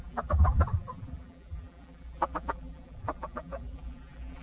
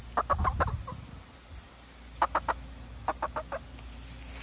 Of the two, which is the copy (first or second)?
first